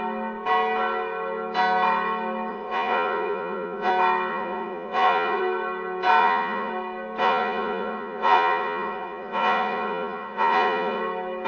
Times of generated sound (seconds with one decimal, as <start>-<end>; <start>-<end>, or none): 2.5-3.9; 4.3-5.4; 6.2-6.7; 7.2-11.0